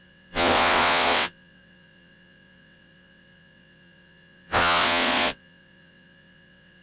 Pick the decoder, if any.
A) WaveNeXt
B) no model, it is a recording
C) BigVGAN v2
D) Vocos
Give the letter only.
A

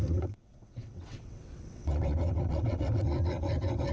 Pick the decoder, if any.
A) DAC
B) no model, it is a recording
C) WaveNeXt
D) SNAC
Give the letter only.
C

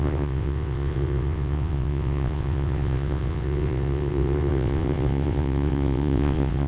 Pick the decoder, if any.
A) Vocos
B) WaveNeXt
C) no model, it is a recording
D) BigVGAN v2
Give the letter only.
B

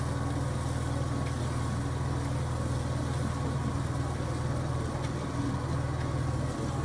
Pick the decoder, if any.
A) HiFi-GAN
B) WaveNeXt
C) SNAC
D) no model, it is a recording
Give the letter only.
D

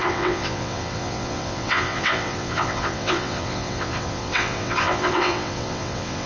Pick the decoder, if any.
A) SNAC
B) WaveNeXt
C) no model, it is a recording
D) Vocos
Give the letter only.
B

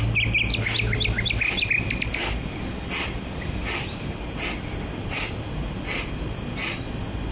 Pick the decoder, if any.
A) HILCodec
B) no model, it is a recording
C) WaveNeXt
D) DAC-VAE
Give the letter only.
B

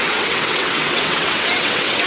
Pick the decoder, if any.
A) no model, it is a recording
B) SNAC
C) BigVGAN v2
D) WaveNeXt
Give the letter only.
D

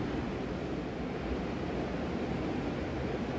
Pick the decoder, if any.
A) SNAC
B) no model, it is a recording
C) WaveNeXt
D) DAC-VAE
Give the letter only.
B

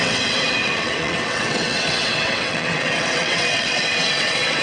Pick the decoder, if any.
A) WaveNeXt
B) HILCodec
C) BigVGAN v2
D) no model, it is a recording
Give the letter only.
A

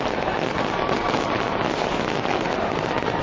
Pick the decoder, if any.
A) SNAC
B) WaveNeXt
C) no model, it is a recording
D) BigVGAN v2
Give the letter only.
C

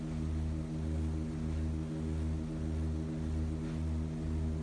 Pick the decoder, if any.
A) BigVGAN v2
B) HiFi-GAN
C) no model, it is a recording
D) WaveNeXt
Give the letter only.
C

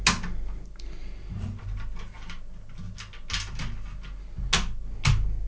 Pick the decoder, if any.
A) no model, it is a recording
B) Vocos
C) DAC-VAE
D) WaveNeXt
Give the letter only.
A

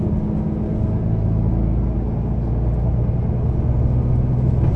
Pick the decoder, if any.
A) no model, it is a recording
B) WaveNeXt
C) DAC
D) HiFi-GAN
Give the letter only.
A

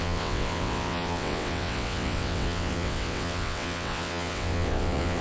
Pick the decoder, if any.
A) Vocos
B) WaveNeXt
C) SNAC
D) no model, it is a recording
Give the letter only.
B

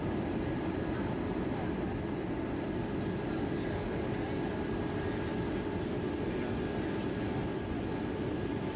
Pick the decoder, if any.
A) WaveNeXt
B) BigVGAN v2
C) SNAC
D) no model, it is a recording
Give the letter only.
D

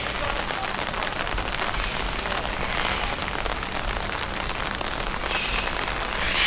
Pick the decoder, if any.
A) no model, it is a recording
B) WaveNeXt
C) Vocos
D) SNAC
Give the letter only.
A